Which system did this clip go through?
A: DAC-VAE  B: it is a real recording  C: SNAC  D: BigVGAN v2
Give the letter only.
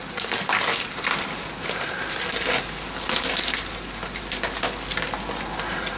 D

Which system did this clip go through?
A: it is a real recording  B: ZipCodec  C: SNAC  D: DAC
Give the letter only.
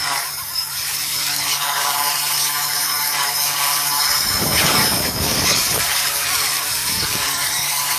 D